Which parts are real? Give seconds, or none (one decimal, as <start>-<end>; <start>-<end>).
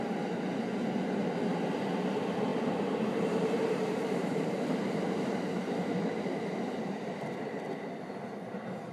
0.0-2.5; 5.5-8.9